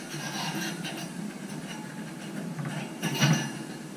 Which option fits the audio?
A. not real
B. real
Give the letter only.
A